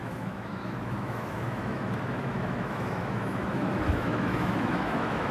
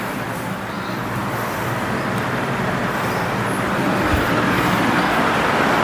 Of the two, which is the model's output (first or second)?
first